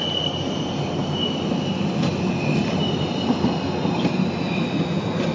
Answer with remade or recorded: recorded